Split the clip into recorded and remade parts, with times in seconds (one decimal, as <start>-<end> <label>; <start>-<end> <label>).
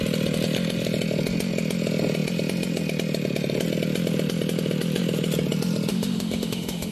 0.0-5.9 recorded; 5.9-6.9 remade